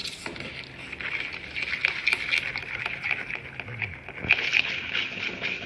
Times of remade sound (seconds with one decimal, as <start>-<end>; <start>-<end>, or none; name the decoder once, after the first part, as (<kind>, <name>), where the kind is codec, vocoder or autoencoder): none